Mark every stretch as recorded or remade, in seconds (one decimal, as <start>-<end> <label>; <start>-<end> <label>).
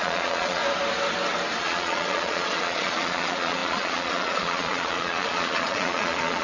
0.0-0.6 remade; 0.6-1.6 recorded; 1.6-6.4 remade